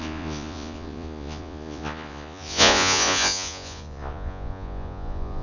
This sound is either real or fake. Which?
fake